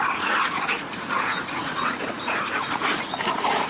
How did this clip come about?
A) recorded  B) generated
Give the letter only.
B